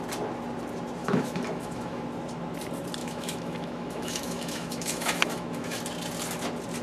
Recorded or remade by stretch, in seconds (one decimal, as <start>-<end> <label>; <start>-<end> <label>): 0.0-1.0 recorded; 1.0-2.0 remade; 2.0-3.0 recorded; 3.0-5.8 remade; 5.8-6.8 recorded